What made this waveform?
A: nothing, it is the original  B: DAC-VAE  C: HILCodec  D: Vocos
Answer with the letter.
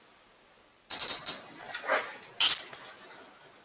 A